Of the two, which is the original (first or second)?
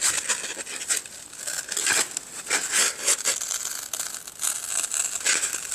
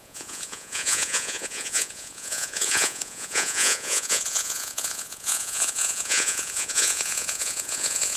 first